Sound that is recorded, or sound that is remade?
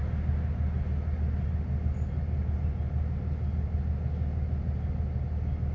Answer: recorded